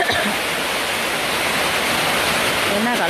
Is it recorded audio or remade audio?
recorded